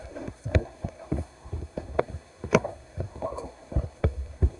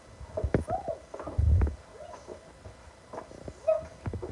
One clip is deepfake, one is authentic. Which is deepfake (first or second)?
first